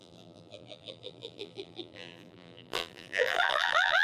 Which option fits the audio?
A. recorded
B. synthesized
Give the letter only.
B